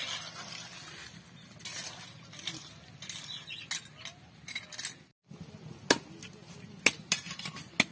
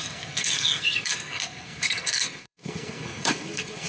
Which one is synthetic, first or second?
second